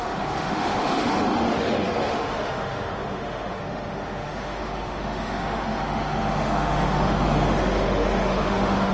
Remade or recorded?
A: remade